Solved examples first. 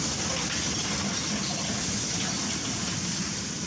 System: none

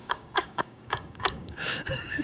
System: codec, DAC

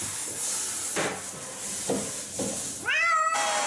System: none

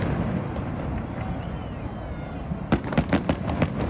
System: none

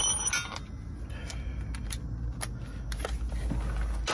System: none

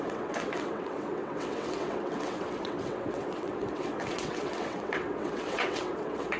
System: vocoder, WaveNeXt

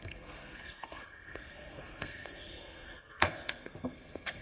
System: codec, SNAC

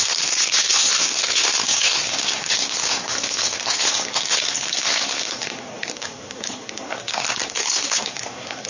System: codec, SNAC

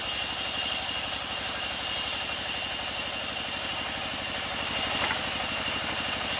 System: none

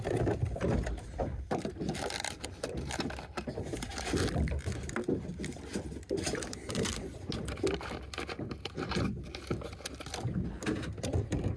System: none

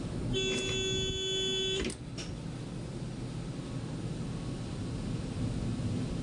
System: none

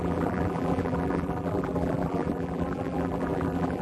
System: vocoder, BigVGAN v2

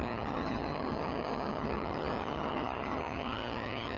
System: vocoder, HiFi-GAN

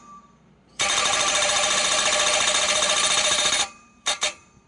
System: vocoder, BigVGAN v2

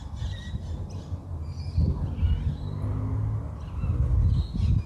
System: none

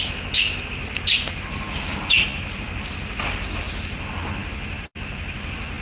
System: none